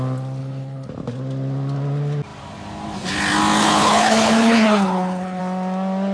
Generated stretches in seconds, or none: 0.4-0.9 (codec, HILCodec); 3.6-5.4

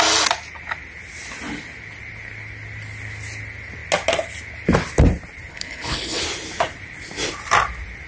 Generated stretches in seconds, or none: 5.5-6.2 (codec, HILCodec)

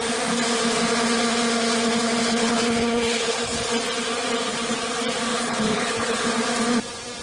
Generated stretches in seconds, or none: 2.2-3.7 (codec, HILCodec); 5.3-6.3

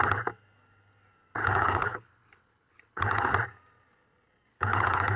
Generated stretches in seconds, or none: 1.4-3.3 (codec, HILCodec); 4.5-5.2

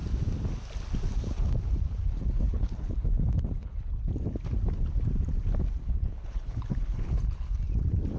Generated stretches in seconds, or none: 2.0-4.1 (codec, HILCodec); 5.8-7.6